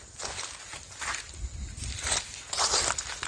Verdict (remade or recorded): recorded